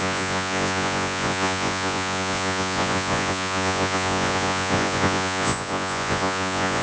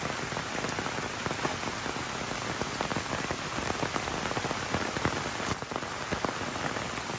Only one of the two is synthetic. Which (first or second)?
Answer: first